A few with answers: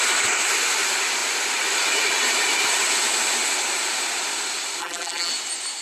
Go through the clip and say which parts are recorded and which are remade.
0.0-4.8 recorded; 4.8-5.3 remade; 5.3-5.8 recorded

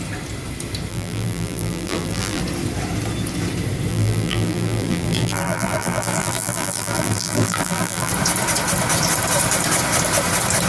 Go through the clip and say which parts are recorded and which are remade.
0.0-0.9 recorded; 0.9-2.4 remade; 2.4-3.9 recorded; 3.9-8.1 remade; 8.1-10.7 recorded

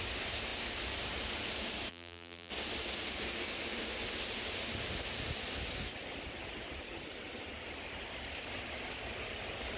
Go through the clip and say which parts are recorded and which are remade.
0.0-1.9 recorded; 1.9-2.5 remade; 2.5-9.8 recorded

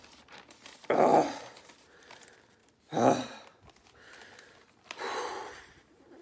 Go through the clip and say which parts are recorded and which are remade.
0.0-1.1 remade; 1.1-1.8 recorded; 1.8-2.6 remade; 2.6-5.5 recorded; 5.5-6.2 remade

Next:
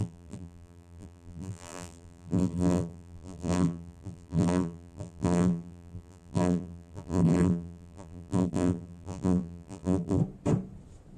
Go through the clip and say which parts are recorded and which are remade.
0.0-10.2 remade; 10.2-11.2 recorded